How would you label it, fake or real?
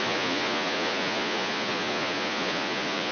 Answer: fake